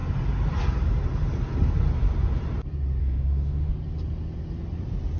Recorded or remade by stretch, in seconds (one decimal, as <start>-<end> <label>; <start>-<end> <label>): 0.0-3.0 recorded; 3.0-3.7 remade; 3.7-5.2 recorded